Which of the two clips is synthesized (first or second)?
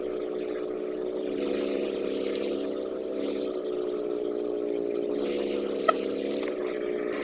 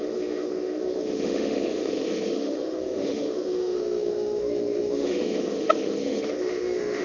second